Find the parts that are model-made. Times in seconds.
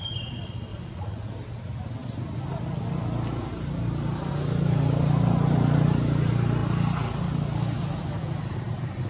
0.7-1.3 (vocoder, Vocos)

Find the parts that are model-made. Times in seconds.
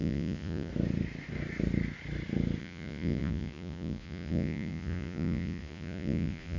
0.0-0.7 (vocoder, Vocos); 2.6-6.6